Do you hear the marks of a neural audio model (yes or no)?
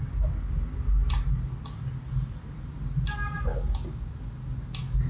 no